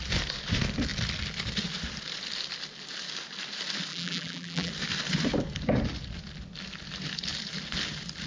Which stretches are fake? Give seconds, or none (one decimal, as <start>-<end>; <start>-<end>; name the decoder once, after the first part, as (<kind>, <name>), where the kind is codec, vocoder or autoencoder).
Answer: 3.9-4.7 (vocoder, BigVGAN v2)